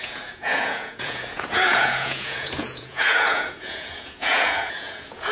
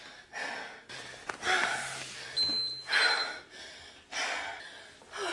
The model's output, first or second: first